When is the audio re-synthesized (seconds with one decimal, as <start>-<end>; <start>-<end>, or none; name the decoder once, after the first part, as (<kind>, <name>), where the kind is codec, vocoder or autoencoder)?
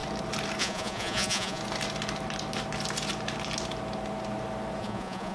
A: 0.6-1.6 (vocoder, Vocos); 4.8-5.3